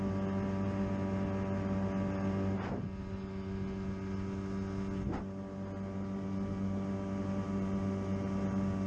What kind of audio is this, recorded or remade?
recorded